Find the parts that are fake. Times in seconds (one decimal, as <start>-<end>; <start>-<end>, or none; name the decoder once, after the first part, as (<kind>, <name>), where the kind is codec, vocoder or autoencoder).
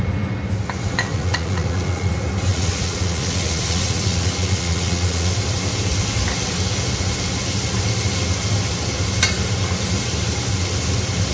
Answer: 1.1-2.1 (vocoder, Vocos); 2.5-5.3